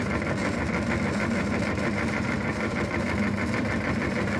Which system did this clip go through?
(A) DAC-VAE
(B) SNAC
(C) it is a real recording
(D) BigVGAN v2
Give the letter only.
D